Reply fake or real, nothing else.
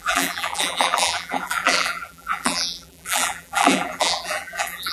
fake